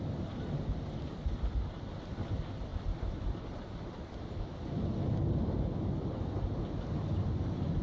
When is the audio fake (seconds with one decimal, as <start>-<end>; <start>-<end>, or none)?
2.7-7.8